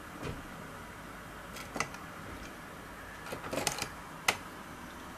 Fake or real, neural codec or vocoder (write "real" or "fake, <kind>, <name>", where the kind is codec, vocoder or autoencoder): real